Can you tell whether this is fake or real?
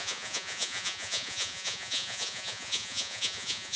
fake